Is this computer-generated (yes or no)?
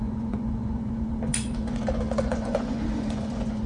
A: yes